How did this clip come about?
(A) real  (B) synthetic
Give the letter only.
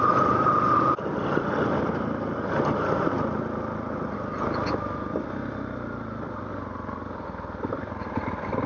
B